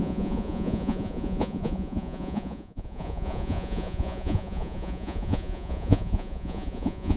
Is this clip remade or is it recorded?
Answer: remade